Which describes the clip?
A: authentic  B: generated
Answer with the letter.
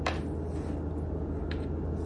A